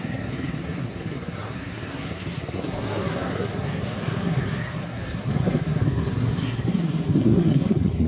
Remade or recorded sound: remade